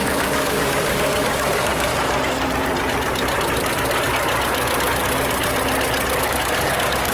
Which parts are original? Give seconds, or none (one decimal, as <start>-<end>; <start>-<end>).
1.9-6.2